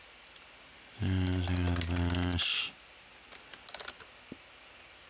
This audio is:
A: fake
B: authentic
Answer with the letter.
B